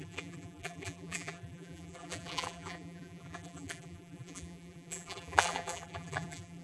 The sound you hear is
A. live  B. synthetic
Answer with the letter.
B